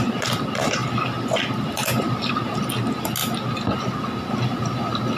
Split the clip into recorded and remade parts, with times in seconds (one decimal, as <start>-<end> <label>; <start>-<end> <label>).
0.0-5.2 recorded